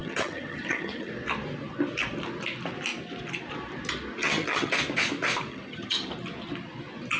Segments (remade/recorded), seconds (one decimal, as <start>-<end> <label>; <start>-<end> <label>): 0.0-1.1 remade; 1.1-4.2 recorded; 4.2-4.7 remade; 4.7-5.5 recorded; 5.5-6.1 remade; 6.1-7.2 recorded